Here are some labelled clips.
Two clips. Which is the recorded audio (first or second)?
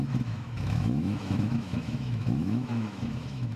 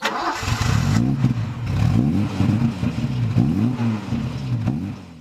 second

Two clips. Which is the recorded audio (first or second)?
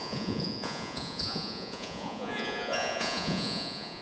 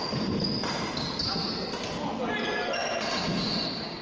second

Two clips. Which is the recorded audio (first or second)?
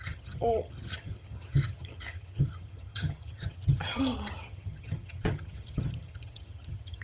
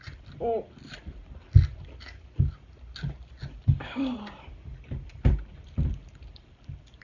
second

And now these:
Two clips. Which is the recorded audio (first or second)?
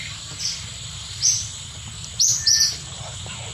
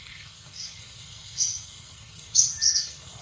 first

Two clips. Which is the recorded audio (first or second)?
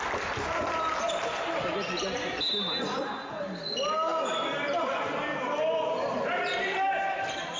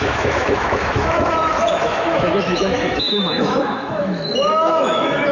first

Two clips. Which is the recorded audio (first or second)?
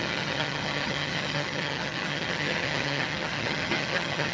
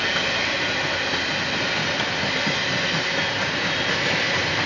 second